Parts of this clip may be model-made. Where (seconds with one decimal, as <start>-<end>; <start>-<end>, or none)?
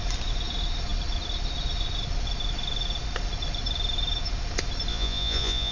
4.9-5.7